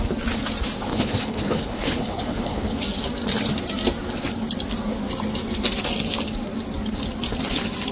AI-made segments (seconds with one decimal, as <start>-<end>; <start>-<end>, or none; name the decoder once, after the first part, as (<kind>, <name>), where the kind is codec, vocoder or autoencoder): 0.9-2.8 (codec, HILCodec)